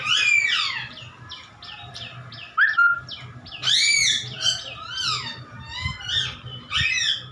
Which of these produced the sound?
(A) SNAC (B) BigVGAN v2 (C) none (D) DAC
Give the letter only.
C